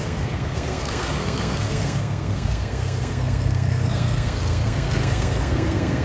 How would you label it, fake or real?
fake